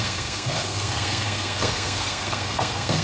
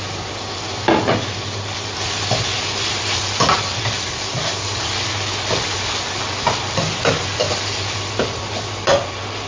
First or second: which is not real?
first